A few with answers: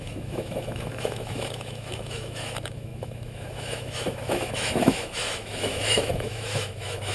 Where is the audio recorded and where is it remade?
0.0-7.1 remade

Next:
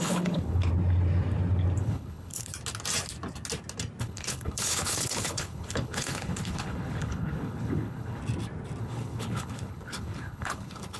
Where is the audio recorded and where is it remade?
0.0-0.7 remade; 0.7-1.8 recorded; 1.8-2.5 remade; 2.5-4.0 recorded; 4.0-8.2 remade; 8.2-8.8 recorded; 8.8-11.0 remade